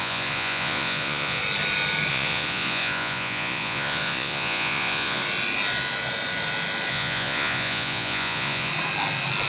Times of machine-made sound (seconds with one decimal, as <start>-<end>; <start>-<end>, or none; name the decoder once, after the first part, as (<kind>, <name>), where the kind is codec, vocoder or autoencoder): 0.0-1.4 (vocoder, Vocos); 2.1-5.2; 6.9-8.7